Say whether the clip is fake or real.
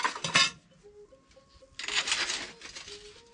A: real